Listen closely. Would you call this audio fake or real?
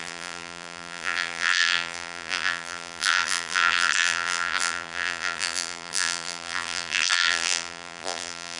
fake